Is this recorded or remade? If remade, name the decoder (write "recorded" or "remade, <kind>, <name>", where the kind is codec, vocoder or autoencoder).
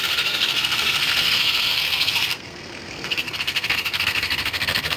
remade, codec, SNAC